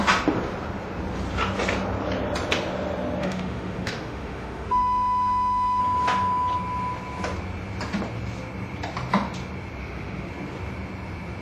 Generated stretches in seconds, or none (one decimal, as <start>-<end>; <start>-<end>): 3.2-5.8; 9.8-10.3